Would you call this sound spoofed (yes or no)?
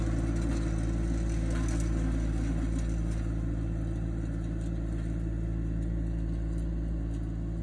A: no